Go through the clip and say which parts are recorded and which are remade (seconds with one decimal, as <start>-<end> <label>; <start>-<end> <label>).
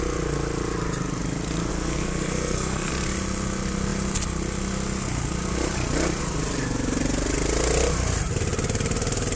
0.0-1.7 recorded; 1.7-2.9 remade; 2.9-9.4 recorded